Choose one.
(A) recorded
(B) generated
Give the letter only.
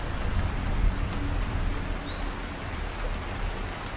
A